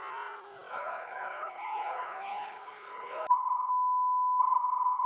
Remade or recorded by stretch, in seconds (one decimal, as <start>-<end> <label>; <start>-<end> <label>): 0.0-0.7 recorded; 0.7-3.7 remade; 3.7-4.4 recorded; 4.4-5.1 remade